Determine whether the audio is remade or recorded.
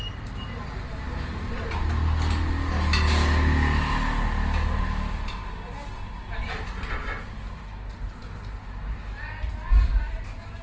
recorded